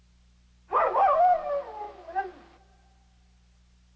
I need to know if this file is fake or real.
real